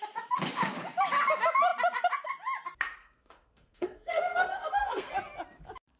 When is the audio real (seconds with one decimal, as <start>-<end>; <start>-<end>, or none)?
0.0-3.0; 5.1-6.0